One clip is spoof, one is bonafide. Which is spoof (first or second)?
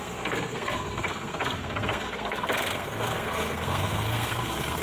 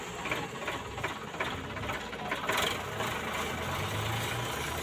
first